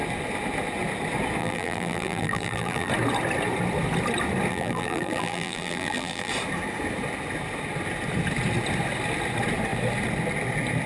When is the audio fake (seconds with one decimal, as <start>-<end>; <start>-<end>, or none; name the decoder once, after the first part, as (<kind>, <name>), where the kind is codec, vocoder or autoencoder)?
1.4-2.9 (vocoder, BigVGAN v2); 4.5-6.3